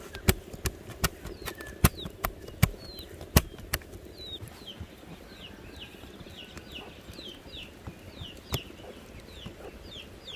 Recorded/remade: recorded